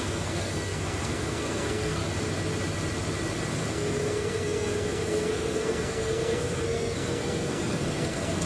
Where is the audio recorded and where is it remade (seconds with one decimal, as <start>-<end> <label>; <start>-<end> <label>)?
0.0-2.0 remade; 2.0-3.7 recorded; 3.7-8.5 remade